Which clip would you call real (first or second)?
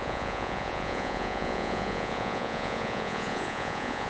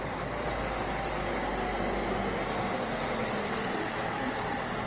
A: second